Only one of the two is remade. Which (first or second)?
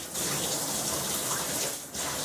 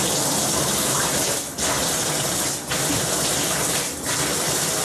second